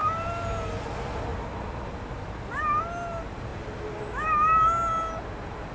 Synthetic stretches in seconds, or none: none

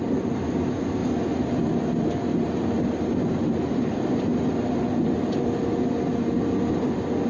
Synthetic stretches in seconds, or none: none

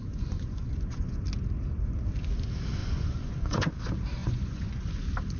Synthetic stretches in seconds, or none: 0.0-1.2; 2.8-3.7; 4.2-4.9

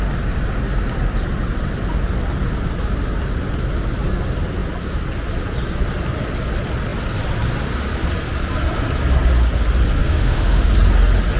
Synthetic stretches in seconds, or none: 10.0-10.7

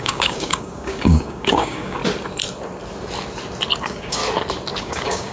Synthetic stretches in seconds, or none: 0.0-2.0; 3.8-4.2; 4.8-5.3